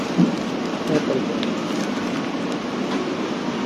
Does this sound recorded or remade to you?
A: recorded